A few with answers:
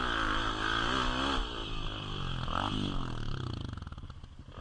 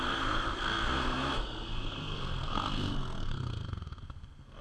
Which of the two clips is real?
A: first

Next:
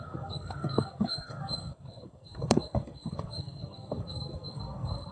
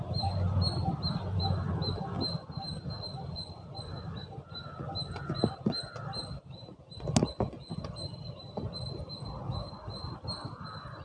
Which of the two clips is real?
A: second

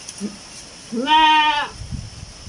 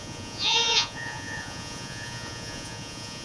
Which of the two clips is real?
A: first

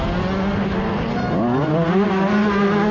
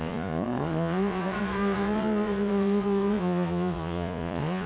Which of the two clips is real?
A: first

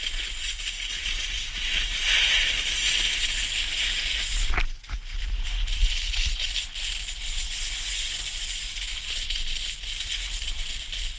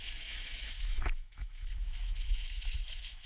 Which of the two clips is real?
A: first